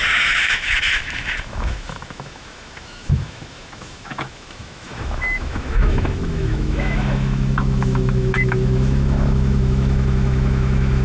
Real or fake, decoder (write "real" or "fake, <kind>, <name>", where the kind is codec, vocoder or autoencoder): fake, autoencoder, DAC-VAE